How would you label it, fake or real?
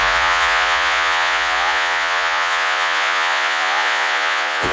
fake